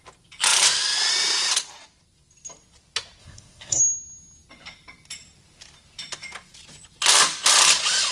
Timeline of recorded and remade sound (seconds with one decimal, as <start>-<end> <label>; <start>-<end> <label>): 0.0-3.2 recorded; 3.2-3.8 remade; 3.8-8.1 recorded